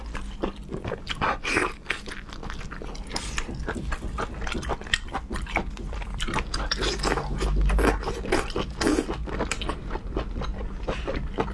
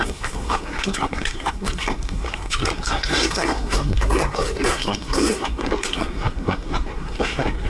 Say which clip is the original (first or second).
first